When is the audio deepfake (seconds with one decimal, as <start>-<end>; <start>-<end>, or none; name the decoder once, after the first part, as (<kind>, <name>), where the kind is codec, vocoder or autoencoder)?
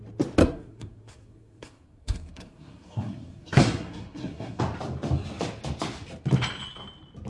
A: 0.4-4.6 (codec, SNAC)